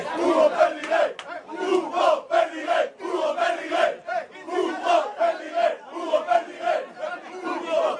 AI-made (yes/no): no